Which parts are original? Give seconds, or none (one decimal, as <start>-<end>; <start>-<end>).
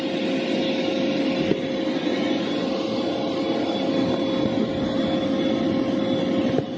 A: 0.0-2.0; 2.7-6.8